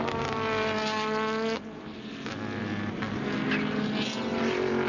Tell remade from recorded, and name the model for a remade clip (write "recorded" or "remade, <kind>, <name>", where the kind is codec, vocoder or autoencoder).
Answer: recorded